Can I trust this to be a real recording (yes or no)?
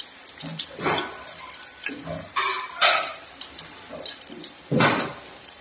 yes